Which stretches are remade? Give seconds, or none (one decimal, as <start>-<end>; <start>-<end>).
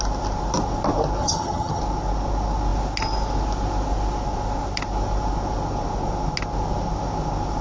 1.2-1.8